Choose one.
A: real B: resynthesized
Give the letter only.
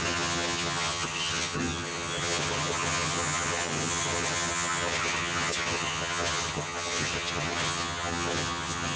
B